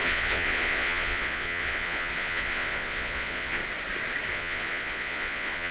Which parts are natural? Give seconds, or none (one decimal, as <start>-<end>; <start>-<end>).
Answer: 3.6-4.3